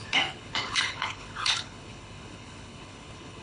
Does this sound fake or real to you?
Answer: fake